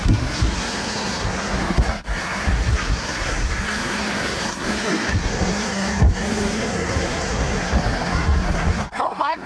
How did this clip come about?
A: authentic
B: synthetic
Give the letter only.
B